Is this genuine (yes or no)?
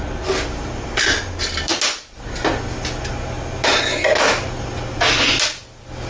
yes